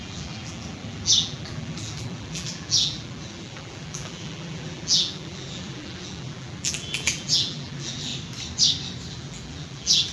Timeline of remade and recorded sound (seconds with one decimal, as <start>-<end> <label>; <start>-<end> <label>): 0.0-8.1 remade; 8.1-9.1 recorded; 9.1-10.1 remade